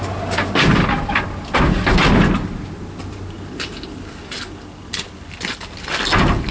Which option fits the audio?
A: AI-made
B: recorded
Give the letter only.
B